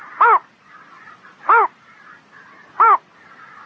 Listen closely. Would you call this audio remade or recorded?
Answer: recorded